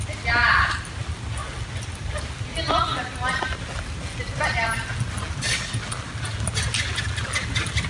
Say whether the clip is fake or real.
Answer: real